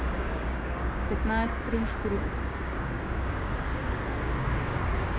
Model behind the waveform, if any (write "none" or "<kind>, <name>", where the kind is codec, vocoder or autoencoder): codec, DAC